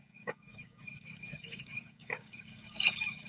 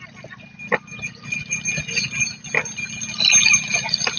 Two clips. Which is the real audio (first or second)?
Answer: second